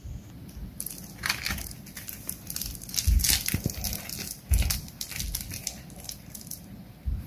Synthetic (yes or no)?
no